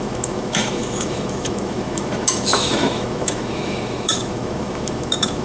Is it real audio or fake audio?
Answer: fake